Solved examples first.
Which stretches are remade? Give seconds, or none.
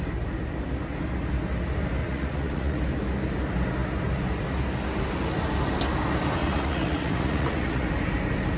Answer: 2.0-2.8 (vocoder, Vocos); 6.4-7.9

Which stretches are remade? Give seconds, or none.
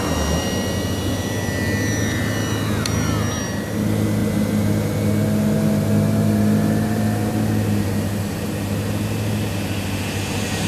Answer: none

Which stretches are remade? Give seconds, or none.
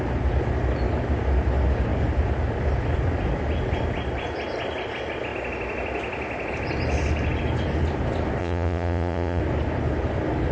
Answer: 8.4-9.4 (vocoder, Vocos)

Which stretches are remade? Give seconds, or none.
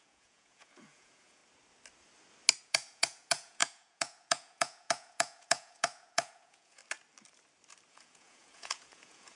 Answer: 0.0-1.4 (vocoder, Vocos); 2.6-6.8; 7.9-9.4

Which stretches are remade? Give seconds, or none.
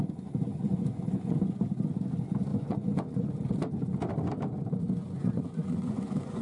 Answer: 0.5-1.4 (vocoder, Vocos); 2.5-3.3; 5.0-6.4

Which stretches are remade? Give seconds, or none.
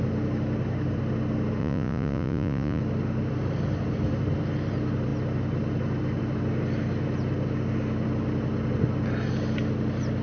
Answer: 1.6-2.8 (vocoder, Vocos)